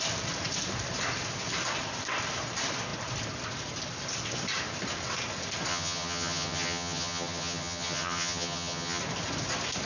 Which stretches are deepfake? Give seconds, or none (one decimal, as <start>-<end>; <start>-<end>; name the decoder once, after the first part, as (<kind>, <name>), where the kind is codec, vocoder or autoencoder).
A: 5.7-9.0 (vocoder, HiFi-GAN)